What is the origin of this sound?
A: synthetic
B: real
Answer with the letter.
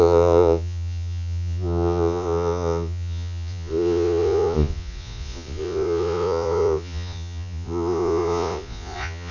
A